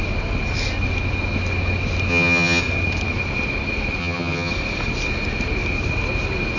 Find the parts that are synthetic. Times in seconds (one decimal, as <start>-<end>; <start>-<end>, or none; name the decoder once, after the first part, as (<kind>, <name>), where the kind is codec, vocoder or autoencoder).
2.1-2.6 (vocoder, HiFi-GAN); 4.0-4.5